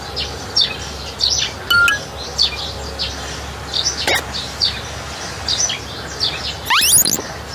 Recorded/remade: recorded